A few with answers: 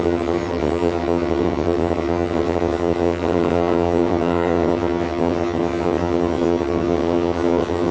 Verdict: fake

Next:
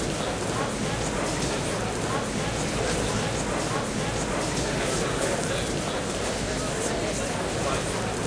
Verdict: real